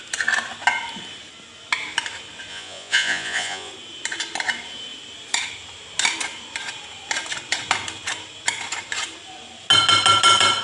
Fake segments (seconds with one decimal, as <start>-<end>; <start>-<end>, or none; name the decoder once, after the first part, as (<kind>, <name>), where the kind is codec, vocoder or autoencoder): 2.5-3.7 (vocoder, Vocos)